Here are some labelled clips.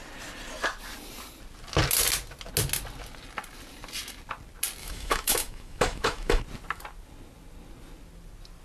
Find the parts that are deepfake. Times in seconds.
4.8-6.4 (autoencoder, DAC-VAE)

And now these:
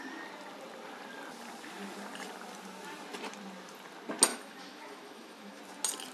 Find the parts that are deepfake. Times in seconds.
4.3-5.6 (autoencoder, DAC-VAE)

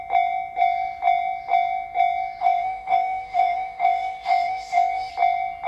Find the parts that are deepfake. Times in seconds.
2.4-5.1 (autoencoder, DAC-VAE)

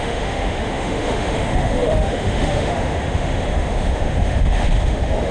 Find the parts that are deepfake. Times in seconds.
0.0-5.3 (autoencoder, DAC-VAE)